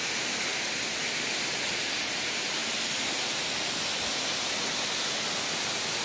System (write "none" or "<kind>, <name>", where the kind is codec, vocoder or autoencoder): none